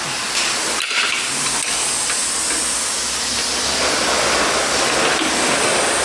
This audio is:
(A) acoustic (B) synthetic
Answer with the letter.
A